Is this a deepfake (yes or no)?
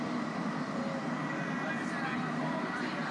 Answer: no